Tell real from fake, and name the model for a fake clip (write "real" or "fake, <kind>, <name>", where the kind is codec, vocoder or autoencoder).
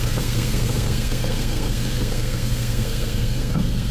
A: fake, codec, SNAC